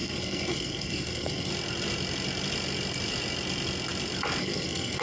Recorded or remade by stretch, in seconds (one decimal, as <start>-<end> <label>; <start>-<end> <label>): 0.0-1.5 remade; 1.5-4.4 recorded; 4.4-5.0 remade